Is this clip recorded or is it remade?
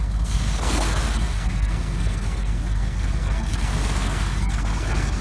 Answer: remade